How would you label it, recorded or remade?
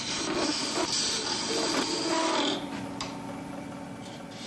recorded